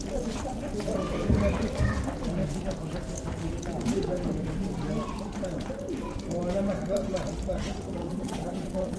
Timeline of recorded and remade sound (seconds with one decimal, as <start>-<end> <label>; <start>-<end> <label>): 0.0-8.0 recorded; 8.0-9.0 remade

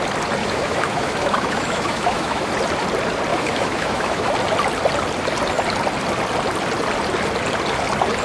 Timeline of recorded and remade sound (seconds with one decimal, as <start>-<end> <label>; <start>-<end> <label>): 0.0-0.4 recorded; 0.4-2.5 remade; 2.5-3.3 recorded; 3.3-4.3 remade; 4.3-8.2 recorded